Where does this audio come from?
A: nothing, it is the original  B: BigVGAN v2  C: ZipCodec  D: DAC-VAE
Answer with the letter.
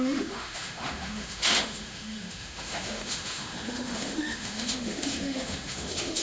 D